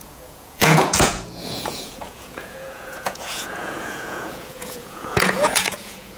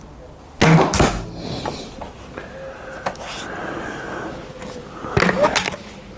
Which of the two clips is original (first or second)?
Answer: second